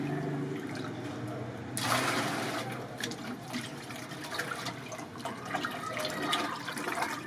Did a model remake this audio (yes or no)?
no